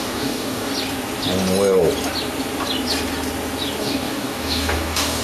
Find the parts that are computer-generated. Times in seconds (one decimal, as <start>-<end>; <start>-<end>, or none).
0.0-0.7; 3.8-5.2